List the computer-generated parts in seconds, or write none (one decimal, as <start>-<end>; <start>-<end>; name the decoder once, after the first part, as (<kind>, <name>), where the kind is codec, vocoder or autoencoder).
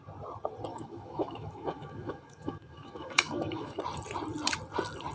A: 0.7-3.8 (autoencoder, DAC-VAE)